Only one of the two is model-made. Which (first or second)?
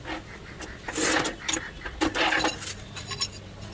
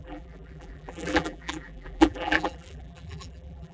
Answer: second